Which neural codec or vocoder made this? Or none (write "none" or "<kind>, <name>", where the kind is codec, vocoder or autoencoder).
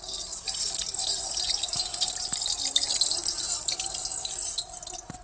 none